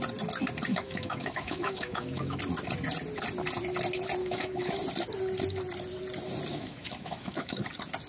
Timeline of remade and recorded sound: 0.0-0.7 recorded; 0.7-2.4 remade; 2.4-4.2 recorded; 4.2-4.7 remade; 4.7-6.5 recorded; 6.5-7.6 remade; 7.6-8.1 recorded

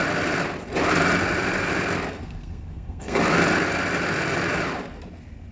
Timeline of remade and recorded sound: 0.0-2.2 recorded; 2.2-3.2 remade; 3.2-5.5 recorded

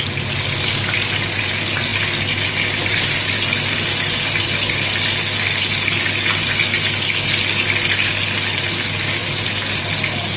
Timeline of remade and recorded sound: 0.0-10.4 recorded